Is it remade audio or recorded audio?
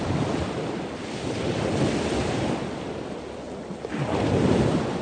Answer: recorded